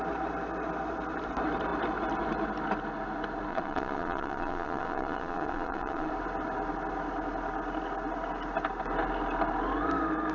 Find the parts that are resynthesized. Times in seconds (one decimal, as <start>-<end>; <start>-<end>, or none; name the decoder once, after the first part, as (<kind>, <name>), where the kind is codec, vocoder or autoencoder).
3.5-6.1 (vocoder, WaveNeXt)